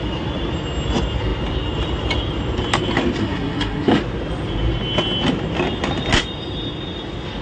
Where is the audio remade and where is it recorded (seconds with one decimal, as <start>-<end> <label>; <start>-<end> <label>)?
0.0-3.2 recorded; 3.2-4.0 remade; 4.0-7.4 recorded